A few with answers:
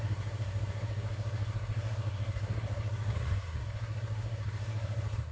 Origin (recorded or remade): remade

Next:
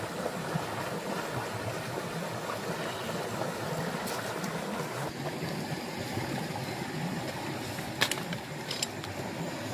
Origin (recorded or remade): recorded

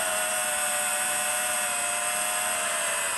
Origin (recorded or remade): recorded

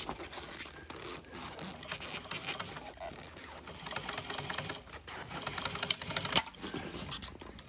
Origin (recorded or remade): recorded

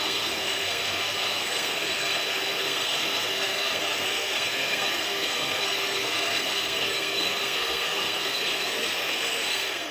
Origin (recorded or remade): remade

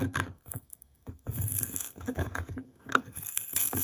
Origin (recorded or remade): remade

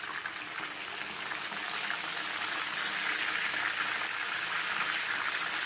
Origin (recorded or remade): recorded